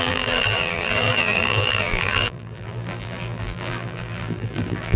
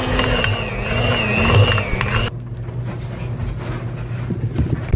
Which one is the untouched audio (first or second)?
second